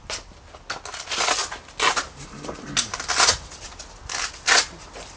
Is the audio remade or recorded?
recorded